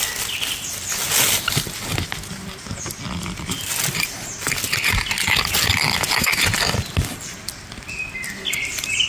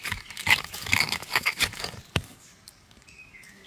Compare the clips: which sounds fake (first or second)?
second